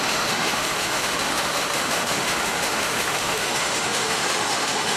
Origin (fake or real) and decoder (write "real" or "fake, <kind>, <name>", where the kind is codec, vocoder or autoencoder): fake, autoencoder, DAC-VAE